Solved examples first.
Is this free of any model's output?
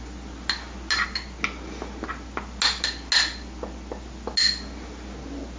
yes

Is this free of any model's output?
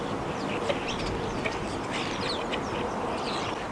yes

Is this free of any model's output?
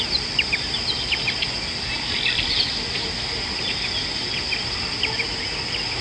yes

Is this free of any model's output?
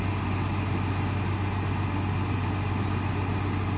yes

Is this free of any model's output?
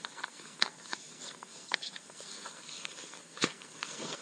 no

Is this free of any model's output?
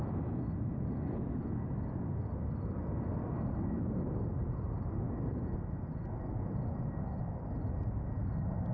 yes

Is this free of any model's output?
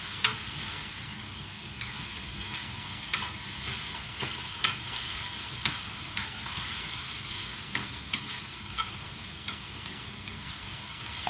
no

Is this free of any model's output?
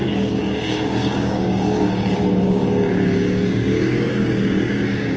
no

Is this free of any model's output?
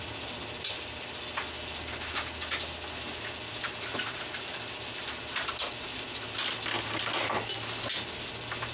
yes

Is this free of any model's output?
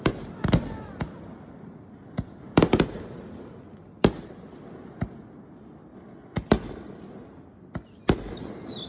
yes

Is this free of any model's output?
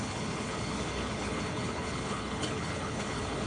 no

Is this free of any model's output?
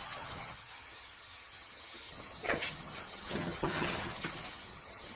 no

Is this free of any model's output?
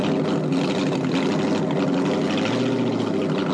yes